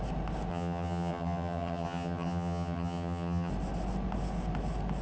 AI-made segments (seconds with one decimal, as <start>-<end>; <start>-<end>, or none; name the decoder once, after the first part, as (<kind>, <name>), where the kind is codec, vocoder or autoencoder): 0.5-3.5 (vocoder, HiFi-GAN)